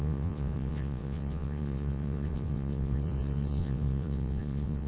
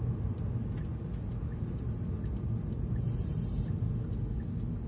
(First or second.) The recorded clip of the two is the second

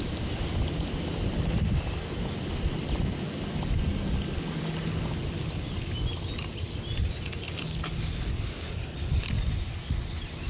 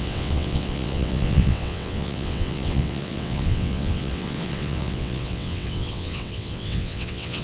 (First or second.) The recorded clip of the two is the first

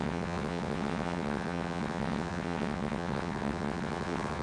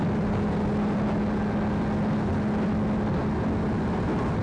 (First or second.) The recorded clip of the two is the second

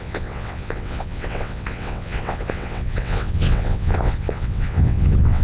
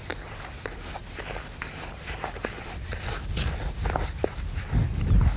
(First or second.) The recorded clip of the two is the second